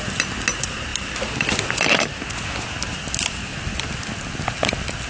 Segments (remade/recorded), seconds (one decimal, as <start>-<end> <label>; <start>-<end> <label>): 0.0-5.1 recorded